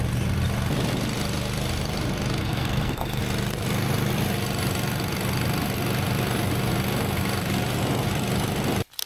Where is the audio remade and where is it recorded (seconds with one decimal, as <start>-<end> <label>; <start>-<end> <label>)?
0.0-2.4 recorded; 2.4-3.2 remade; 3.2-9.1 recorded